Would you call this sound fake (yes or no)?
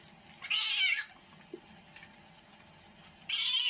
no